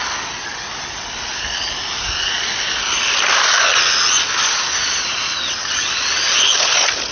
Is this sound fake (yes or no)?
no